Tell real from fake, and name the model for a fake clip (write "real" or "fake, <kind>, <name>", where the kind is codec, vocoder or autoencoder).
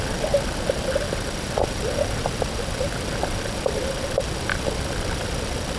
real